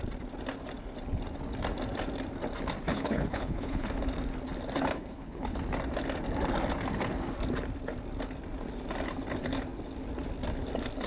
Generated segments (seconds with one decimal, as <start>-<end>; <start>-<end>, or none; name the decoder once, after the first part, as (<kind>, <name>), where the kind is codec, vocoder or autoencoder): 2.9-3.9 (codec, HILCodec); 4.9-5.6